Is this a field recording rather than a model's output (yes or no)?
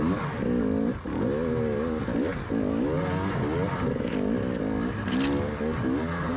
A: yes